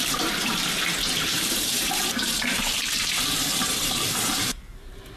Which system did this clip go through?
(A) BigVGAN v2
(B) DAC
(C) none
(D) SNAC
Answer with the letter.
A